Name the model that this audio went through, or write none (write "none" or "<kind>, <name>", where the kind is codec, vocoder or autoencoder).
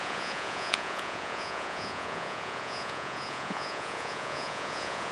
vocoder, Vocos